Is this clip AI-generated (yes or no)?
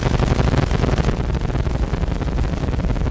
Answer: no